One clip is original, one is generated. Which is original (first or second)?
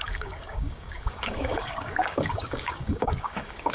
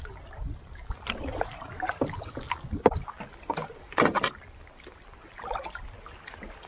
second